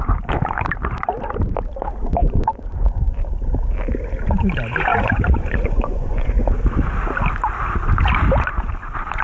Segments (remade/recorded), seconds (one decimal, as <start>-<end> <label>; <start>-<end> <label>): 0.0-2.2 recorded; 2.2-3.1 remade; 3.1-4.9 recorded; 4.9-6.4 remade; 6.4-9.2 recorded